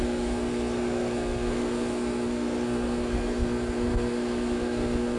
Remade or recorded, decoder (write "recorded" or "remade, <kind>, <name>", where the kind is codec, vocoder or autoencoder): remade, codec, SNAC